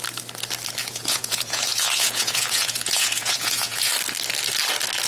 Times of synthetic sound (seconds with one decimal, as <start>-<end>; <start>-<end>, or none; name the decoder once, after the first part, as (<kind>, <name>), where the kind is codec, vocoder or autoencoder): 0.8-3.9 (vocoder, Vocos)